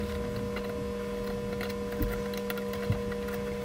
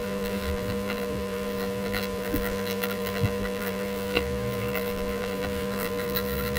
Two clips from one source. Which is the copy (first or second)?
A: second